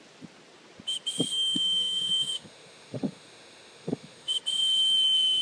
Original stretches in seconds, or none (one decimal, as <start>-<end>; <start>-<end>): 0.0-1.3; 4.4-5.4